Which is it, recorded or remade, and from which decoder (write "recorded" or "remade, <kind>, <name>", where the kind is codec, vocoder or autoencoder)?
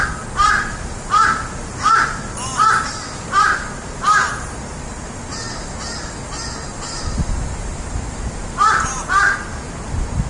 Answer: recorded